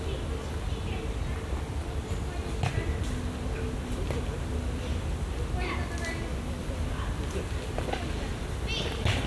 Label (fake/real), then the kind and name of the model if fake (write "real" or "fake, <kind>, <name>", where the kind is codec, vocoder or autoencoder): real